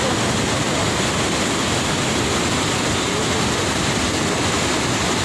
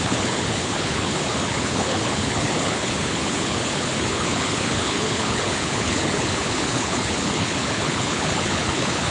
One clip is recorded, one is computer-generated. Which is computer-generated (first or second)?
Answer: second